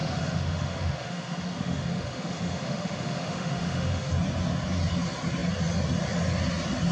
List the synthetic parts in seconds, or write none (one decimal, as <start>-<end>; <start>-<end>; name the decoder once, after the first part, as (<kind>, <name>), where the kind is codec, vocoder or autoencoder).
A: 0.0-4.1 (autoencoder, DAC-VAE)

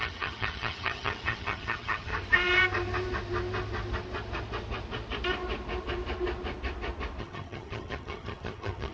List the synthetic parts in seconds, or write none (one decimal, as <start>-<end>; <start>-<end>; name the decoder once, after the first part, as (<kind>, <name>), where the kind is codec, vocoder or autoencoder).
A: 0.0-2.1 (vocoder, HiFi-GAN); 7.2-8.9

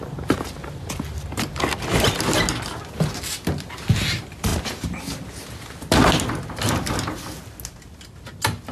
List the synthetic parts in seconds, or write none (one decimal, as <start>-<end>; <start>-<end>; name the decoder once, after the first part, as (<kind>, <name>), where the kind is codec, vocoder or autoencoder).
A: none

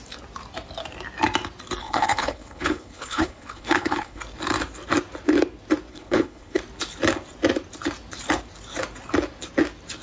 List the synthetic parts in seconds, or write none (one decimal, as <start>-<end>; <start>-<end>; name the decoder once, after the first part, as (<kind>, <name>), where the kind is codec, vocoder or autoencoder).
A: 1.8-4.2 (codec, HILCodec); 5.9-6.6

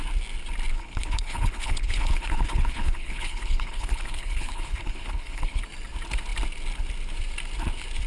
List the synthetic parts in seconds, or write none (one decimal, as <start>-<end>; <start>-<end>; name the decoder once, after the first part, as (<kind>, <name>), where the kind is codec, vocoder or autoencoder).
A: 0.7-5.6 (codec, HILCodec)

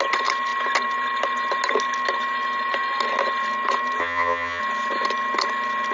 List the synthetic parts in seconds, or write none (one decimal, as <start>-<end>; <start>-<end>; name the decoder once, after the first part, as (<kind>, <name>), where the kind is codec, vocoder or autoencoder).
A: 4.0-4.6 (vocoder, HiFi-GAN)

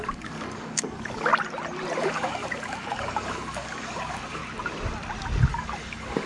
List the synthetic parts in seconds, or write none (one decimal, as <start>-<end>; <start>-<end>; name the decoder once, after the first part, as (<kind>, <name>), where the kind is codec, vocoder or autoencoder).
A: 0.0-1.3 (codec, DAC); 2.0-4.4; 5.5-6.3